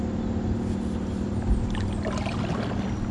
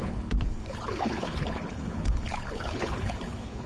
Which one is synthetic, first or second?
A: second